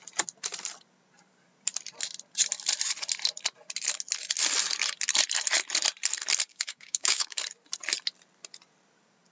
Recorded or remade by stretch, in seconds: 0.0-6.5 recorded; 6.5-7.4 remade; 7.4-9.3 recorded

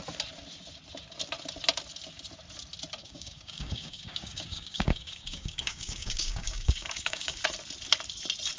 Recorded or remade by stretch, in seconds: 0.0-3.0 recorded; 3.0-7.4 remade; 7.4-8.6 recorded

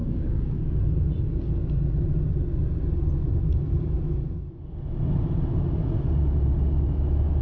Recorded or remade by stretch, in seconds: 0.0-0.8 remade; 0.8-7.4 recorded

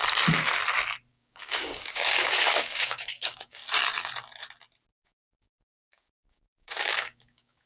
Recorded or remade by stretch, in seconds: 0.0-1.1 recorded; 1.1-3.6 remade; 3.6-4.9 recorded; 4.9-7.7 remade

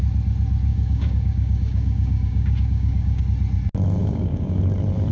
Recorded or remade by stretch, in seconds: 0.0-0.7 recorded; 0.7-3.2 remade; 3.2-4.0 recorded; 4.0-4.6 remade; 4.6-5.1 recorded

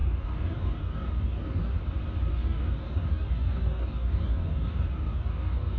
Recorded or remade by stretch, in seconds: 0.0-1.8 remade; 1.8-2.3 recorded; 2.3-5.8 remade

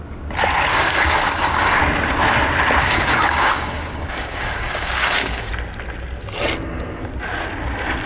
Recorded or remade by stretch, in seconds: 0.0-0.7 recorded; 0.7-1.8 remade; 1.8-2.8 recorded; 2.8-5.5 remade; 5.5-8.1 recorded

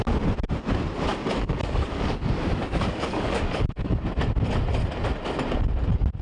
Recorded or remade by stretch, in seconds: 0.0-1.1 recorded; 1.1-4.0 remade; 4.0-6.2 recorded